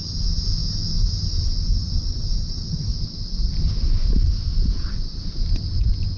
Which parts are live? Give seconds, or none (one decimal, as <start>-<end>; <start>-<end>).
0.0-6.2